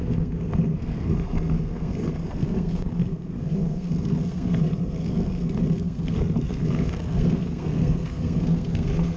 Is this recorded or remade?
remade